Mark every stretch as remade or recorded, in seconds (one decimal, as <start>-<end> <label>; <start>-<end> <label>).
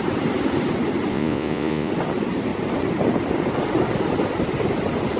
0.0-1.1 recorded; 1.1-1.9 remade; 1.9-5.2 recorded